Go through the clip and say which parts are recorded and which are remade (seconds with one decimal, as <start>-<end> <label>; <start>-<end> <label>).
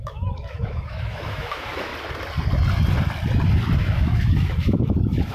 0.0-1.9 remade; 1.9-3.8 recorded; 3.8-5.3 remade